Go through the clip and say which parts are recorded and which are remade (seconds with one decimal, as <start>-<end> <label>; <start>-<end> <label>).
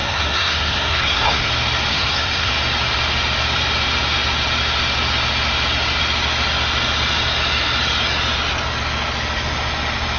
0.0-1.5 remade; 1.5-1.9 recorded; 1.9-2.5 remade; 2.5-10.2 recorded